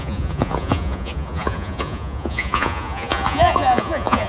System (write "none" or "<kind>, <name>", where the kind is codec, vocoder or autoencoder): vocoder, Vocos